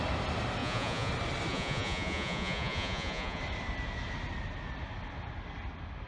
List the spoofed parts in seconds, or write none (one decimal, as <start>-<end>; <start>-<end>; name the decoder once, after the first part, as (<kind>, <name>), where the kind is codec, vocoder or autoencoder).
0.6-1.1 (vocoder, Vocos); 1.5-3.4